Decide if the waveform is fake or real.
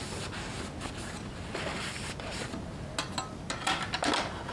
real